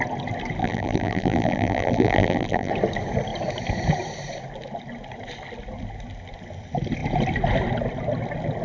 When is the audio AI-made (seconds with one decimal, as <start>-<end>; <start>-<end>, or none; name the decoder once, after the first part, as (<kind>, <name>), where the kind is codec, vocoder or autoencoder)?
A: 0.6-2.7 (vocoder, BigVGAN v2)